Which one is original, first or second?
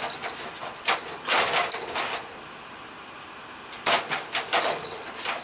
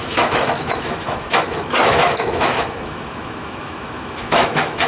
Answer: first